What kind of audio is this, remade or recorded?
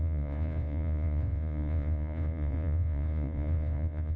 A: remade